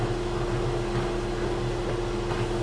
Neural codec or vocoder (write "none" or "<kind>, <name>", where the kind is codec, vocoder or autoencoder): none